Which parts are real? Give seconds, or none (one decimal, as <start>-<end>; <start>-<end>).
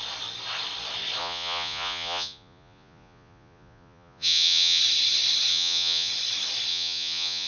0.0-1.2; 4.8-5.5; 6.1-6.7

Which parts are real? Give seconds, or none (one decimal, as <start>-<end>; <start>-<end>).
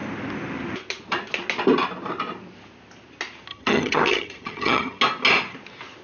0.0-3.5; 5.0-6.0